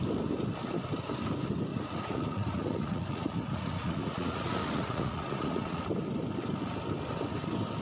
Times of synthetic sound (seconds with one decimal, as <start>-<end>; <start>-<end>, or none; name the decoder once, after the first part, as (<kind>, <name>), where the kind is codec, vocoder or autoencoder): 1.7-5.8 (vocoder, Vocos)